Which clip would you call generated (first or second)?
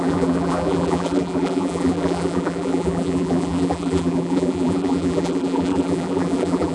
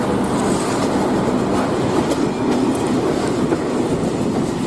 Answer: first